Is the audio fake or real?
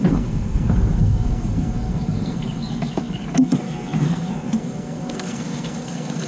fake